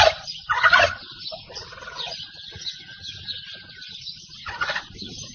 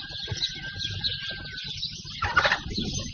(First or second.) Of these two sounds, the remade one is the first